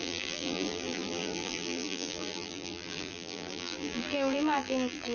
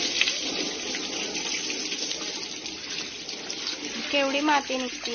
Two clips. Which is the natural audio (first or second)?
second